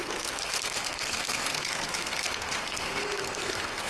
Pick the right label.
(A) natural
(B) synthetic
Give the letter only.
B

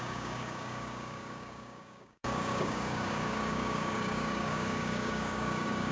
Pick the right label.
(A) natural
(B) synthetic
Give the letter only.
B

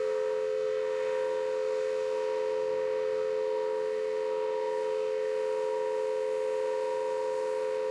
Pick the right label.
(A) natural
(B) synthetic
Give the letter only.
B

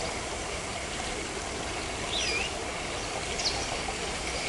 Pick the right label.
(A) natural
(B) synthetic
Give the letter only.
A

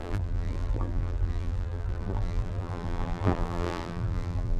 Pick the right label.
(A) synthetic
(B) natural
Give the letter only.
A